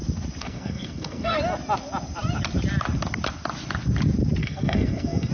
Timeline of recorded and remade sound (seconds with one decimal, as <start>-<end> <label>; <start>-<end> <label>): 0.0-0.4 recorded; 0.4-1.4 remade; 1.4-4.4 recorded; 4.4-5.3 remade